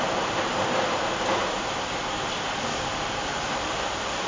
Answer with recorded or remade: recorded